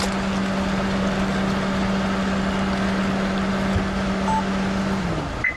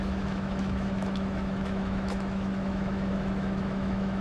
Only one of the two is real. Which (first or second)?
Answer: first